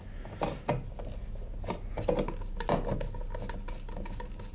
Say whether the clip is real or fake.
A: real